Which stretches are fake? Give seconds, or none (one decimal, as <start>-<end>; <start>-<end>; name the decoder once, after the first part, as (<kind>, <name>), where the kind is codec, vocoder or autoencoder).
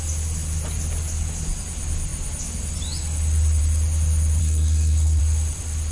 4.4-5.2 (codec, SNAC)